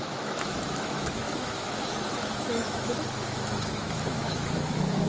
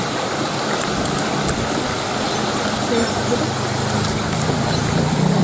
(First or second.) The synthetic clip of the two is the first